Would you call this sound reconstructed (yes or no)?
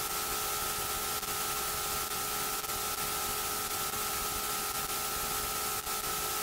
no